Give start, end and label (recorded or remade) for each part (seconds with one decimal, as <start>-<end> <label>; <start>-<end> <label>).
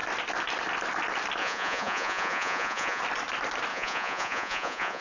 0.0-1.4 recorded; 1.4-3.0 remade; 3.0-3.7 recorded; 3.7-5.0 remade